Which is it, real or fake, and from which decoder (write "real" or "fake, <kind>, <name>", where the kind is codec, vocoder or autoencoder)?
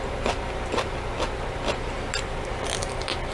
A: real